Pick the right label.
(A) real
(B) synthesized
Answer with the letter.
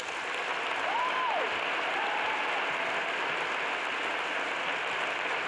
A